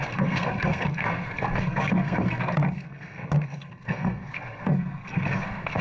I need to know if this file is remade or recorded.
remade